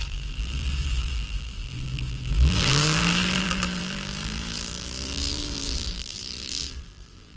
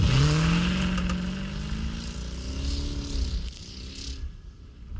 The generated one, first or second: first